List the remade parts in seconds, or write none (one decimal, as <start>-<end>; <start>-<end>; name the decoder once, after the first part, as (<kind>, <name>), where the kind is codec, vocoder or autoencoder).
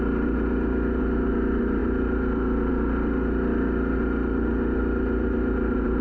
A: none